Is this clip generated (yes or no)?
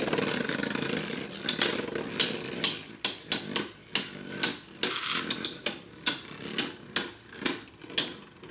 no